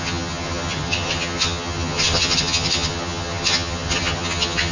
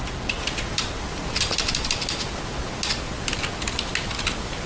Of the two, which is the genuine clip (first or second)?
second